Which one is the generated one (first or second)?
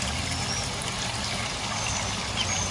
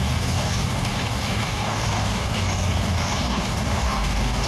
second